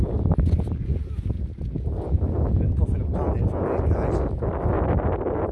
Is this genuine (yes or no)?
yes